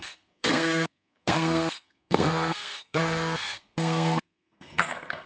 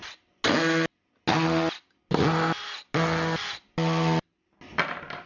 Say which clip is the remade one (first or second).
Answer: first